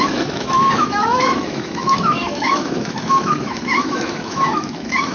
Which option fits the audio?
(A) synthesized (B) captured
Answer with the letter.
A